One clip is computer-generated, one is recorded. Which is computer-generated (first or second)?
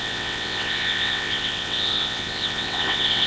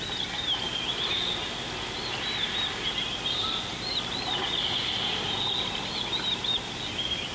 first